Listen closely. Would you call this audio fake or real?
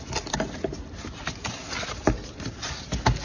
real